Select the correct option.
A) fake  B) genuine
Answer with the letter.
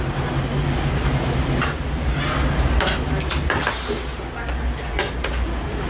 B